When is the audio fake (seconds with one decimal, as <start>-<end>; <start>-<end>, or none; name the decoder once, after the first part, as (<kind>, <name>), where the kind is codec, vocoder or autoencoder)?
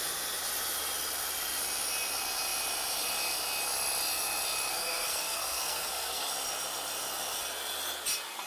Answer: 4.7-6.3 (codec, SNAC)